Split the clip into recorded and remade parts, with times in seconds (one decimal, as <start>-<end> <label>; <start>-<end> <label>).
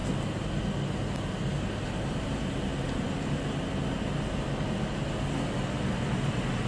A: 0.0-6.7 recorded